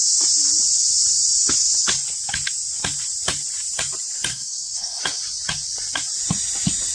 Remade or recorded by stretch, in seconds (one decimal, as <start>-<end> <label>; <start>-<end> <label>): 0.0-4.3 recorded; 4.3-5.0 remade; 5.0-6.9 recorded